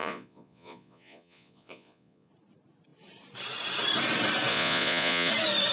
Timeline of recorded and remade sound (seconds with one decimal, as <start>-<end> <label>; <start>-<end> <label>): 0.0-2.3 remade; 2.3-4.5 recorded; 4.5-5.3 remade; 5.3-5.7 recorded